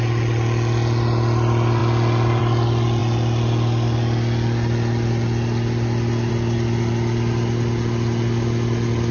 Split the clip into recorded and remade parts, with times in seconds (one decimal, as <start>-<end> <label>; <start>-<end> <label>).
0.0-9.1 recorded